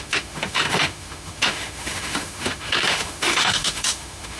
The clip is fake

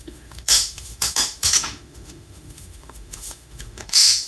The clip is fake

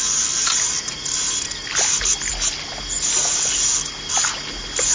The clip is real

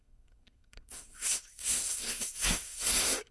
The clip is fake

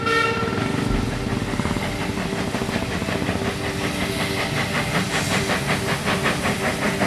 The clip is real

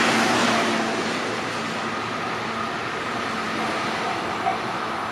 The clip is real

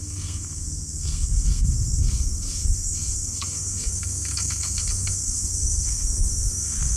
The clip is fake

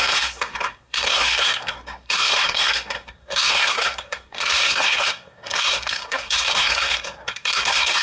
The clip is fake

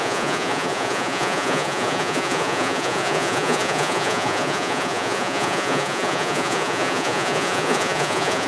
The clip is fake